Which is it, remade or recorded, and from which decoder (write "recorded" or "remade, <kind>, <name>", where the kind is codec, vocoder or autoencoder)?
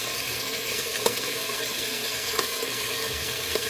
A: remade, codec, SNAC